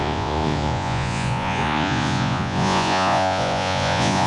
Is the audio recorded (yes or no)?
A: no